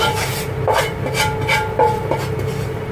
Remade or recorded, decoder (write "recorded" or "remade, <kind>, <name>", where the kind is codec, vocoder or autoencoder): recorded